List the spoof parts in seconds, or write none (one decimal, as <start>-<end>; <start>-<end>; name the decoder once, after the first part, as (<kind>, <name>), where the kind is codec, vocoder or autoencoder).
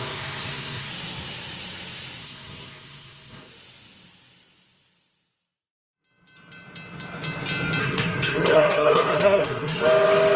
0.0-0.9 (codec, SNAC); 2.2-3.5; 7.8-9.8